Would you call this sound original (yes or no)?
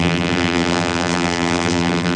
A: no